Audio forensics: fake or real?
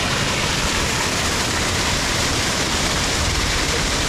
fake